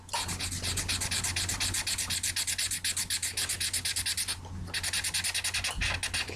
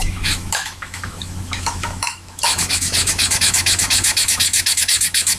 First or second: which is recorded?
first